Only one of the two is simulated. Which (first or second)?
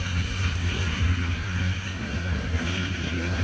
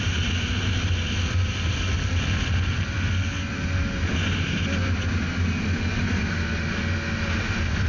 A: first